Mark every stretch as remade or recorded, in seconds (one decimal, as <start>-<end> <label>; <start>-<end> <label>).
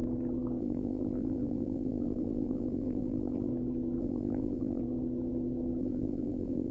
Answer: 0.0-0.6 recorded; 0.6-3.5 remade; 3.5-4.0 recorded; 4.0-4.8 remade; 4.8-5.8 recorded; 5.8-6.7 remade